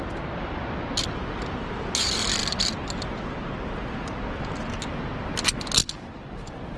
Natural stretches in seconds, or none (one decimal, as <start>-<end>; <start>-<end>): 0.0-6.8